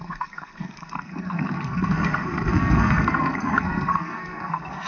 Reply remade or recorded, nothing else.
remade